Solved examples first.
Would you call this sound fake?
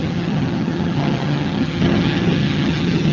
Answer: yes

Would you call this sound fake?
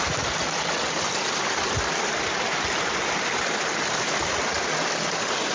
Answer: no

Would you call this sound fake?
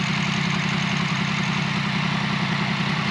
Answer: no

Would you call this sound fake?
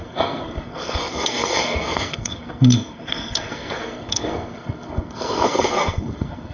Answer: yes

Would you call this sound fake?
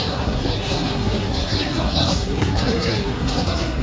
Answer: yes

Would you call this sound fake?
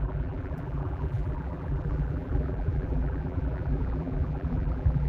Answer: yes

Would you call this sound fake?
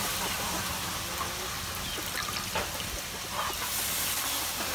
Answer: no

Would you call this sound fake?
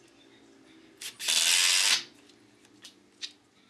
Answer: no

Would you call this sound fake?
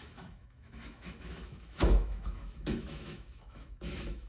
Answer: yes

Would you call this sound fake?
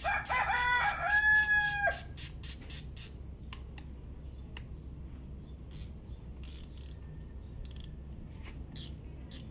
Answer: no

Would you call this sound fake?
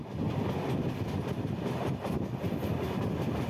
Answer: no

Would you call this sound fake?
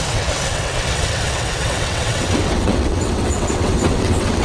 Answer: yes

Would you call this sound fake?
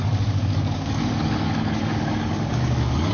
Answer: yes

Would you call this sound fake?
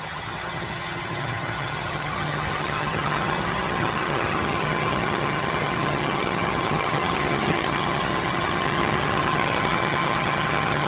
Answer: yes